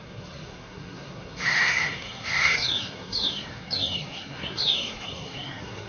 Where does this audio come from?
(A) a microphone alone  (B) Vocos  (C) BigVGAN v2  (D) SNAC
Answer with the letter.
D